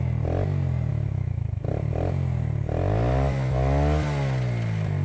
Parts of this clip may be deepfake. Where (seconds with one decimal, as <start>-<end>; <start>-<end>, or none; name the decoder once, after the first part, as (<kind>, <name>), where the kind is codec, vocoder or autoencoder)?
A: 0.9-1.7 (autoencoder, DAC-VAE)